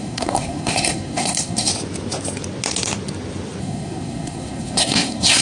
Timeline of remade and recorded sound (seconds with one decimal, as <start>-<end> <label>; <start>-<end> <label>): 0.0-1.7 remade; 1.7-3.6 recorded; 3.6-5.4 remade